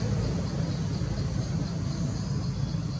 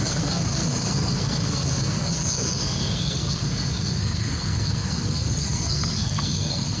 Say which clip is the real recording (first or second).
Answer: first